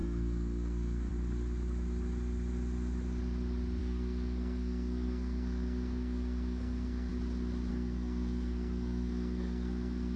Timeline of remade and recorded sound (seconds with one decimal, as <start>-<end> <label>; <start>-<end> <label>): 0.0-1.1 remade; 1.1-3.8 recorded; 3.8-7.1 remade; 7.1-7.7 recorded; 7.7-10.2 remade